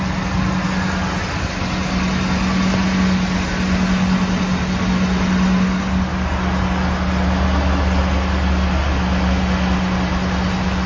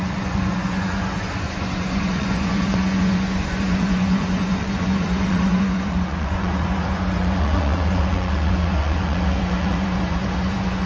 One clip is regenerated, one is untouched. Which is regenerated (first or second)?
second